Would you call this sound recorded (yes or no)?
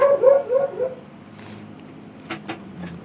yes